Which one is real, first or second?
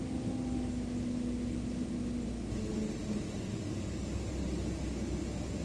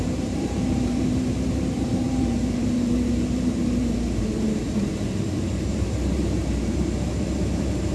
first